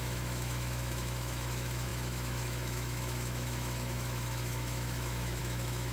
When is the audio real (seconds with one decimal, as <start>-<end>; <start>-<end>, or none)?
none